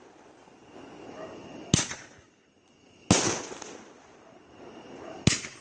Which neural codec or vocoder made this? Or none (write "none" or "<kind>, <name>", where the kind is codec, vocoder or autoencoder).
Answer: none